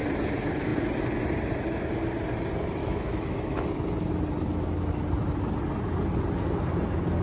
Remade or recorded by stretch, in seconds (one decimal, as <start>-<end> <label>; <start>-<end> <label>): 0.0-2.8 recorded; 2.8-3.7 remade; 3.7-7.2 recorded